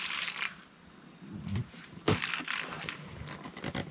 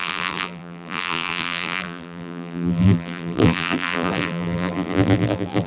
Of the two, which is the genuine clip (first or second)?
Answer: first